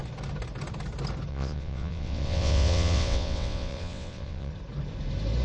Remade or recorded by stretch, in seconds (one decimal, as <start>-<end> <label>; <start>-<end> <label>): 0.0-1.3 recorded; 1.3-4.5 remade; 4.5-5.4 recorded